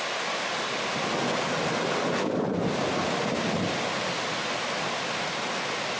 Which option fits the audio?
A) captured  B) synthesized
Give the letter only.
A